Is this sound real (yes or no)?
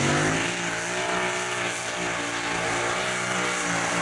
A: yes